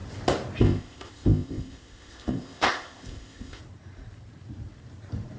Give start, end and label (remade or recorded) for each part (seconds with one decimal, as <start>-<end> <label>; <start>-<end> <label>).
0.0-0.6 recorded; 0.6-3.6 remade; 3.6-5.4 recorded